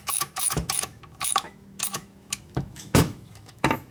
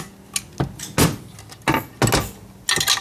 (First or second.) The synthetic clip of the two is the first